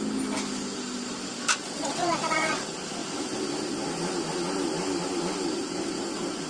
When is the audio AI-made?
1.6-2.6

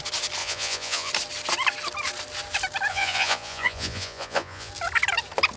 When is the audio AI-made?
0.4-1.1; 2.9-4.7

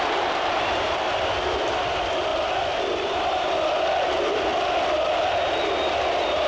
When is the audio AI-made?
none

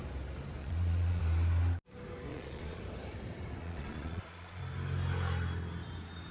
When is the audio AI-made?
0.6-1.2; 2.3-2.8; 3.6-4.6